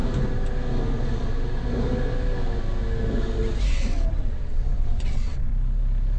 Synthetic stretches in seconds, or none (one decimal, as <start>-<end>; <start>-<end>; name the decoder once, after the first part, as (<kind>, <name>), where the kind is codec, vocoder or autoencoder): 3.7-5.5 (vocoder, WaveNeXt)